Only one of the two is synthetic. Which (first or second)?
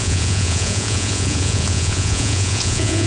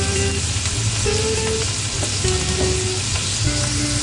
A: first